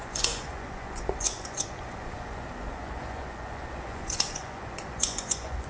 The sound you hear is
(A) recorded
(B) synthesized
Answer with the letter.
B